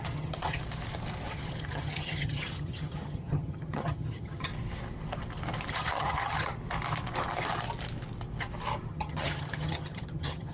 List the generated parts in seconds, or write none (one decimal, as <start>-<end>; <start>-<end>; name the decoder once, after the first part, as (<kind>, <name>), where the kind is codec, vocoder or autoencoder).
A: 0.0-0.6 (vocoder, HiFi-GAN); 1.3-4.5; 5.7-6.5; 8.9-10.5